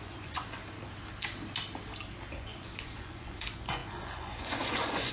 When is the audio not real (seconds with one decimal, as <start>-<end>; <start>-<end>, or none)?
0.0-0.6; 2.3-5.1